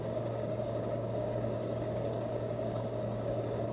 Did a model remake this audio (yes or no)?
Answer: yes